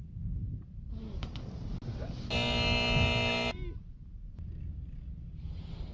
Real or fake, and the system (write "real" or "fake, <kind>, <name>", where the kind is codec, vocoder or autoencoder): real